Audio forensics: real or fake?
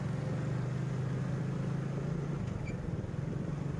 real